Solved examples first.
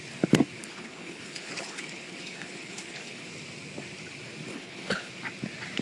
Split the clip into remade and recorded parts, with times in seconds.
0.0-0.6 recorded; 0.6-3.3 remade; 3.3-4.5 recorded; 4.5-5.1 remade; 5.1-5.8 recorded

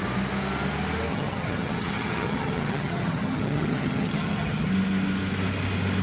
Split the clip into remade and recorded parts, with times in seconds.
0.0-1.1 recorded; 1.1-4.7 remade; 4.7-6.0 recorded